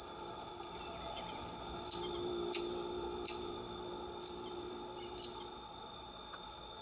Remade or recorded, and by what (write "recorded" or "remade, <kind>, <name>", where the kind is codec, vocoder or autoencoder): recorded